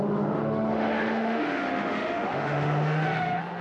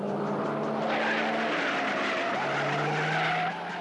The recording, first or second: second